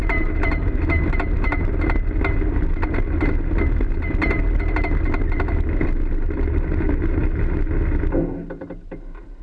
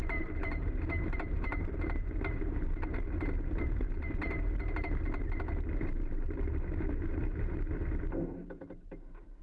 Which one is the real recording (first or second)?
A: first